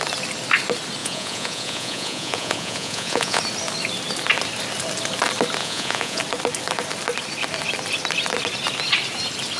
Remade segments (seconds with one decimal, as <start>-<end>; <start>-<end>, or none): 1.0-3.4; 5.6-6.2